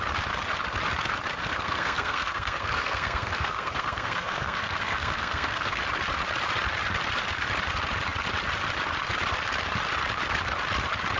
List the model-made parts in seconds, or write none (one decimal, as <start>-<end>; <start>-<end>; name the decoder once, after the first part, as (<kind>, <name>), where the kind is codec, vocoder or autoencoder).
1.4-5.8 (codec, SNAC)